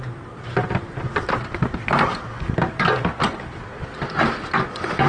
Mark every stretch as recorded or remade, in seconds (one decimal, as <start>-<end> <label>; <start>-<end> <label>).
0.0-5.1 recorded